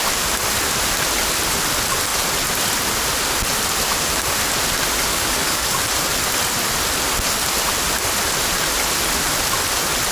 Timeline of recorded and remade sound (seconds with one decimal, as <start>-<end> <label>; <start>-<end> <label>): 0.0-5.1 recorded; 5.1-5.8 remade; 5.8-10.1 recorded